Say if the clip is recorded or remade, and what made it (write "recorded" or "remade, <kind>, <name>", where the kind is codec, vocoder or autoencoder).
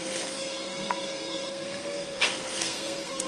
remade, codec, SNAC